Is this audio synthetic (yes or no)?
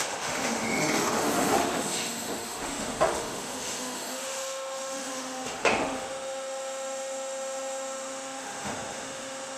yes